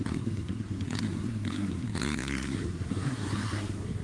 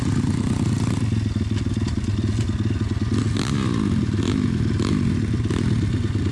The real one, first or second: second